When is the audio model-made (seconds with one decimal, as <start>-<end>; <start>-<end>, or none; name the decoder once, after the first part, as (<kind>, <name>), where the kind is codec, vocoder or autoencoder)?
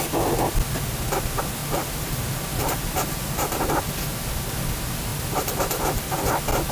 1.6-3.8 (vocoder, BigVGAN v2); 5.1-6.2